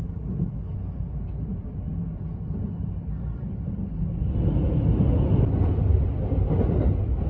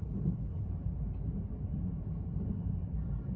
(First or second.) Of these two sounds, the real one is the first